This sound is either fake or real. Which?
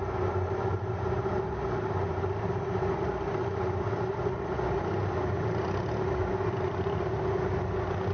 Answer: real